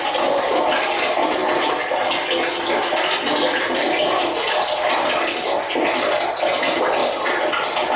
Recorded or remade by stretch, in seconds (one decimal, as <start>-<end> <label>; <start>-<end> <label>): 0.0-8.0 recorded